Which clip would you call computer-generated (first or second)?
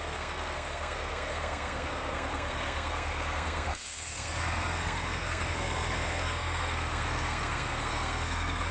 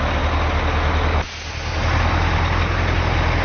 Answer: first